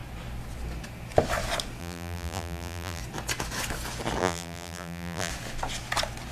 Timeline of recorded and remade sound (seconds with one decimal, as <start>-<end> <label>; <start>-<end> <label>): 0.0-1.8 recorded; 1.8-3.0 remade; 3.0-4.2 recorded; 4.2-5.3 remade; 5.3-6.3 recorded